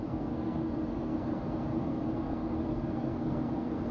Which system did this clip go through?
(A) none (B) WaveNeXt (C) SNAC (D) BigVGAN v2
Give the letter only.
C